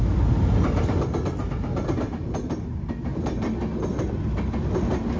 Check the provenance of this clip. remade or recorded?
recorded